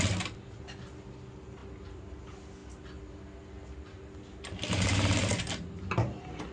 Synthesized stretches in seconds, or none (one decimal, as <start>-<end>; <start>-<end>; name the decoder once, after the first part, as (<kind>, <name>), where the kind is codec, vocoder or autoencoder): none